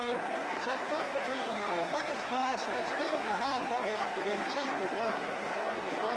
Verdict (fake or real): fake